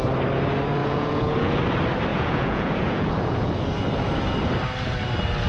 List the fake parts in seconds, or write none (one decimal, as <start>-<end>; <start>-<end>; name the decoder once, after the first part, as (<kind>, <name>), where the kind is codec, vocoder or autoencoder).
0.8-1.6 (vocoder, Vocos); 2.1-3.7